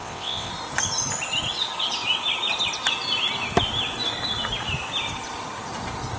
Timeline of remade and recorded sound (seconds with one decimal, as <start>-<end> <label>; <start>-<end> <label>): 0.0-0.5 remade; 0.5-6.2 recorded